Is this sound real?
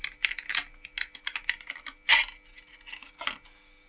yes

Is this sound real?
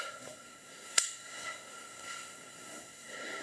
no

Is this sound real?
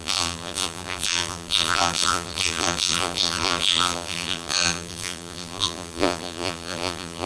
no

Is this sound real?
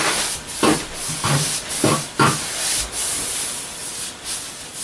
yes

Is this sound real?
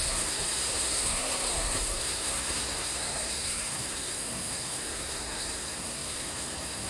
no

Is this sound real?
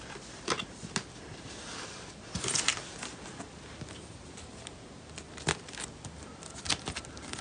yes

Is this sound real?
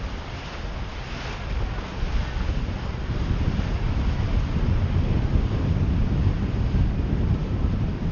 yes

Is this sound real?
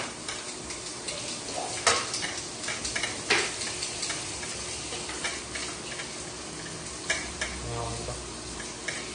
yes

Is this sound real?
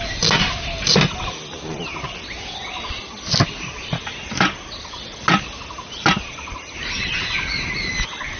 yes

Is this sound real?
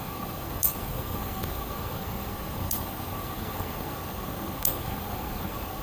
no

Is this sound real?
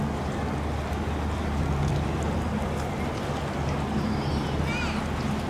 yes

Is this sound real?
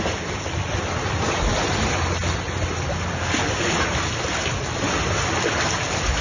yes